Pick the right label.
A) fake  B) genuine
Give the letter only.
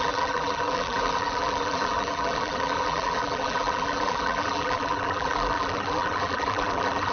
A